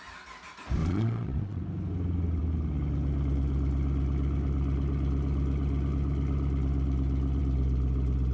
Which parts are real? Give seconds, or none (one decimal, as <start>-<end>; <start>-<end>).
0.0-0.8; 1.6-8.3